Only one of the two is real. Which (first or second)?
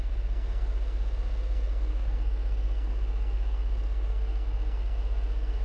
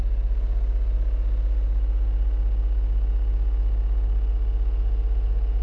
second